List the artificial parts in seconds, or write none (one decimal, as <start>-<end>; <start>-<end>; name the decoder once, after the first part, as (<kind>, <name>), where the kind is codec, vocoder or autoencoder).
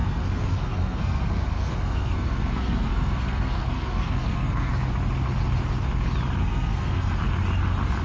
0.0-4.7 (codec, SNAC); 6.4-7.2